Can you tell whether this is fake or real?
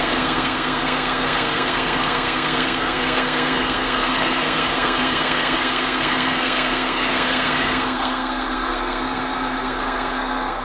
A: fake